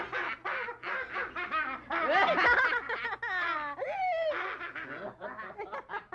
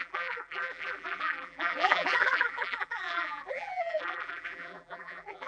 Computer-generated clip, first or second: second